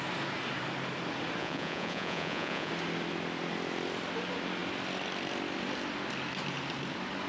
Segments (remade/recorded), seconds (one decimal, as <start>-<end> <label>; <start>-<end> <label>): 0.0-1.4 recorded; 1.4-2.7 remade; 2.7-7.3 recorded